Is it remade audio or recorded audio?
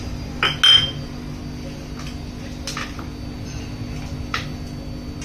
recorded